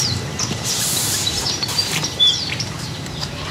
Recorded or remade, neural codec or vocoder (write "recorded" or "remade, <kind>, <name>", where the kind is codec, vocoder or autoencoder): remade, vocoder, BigVGAN v2